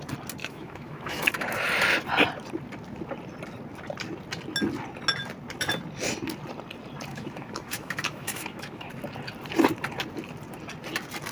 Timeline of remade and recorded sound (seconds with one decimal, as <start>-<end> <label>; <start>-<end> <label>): 0.0-0.4 recorded; 0.4-1.3 remade; 1.3-7.1 recorded; 7.1-8.9 remade; 8.9-11.3 recorded